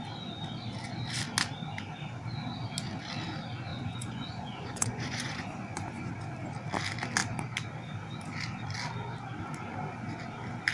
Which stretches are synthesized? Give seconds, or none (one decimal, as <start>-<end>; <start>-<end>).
3.7-6.1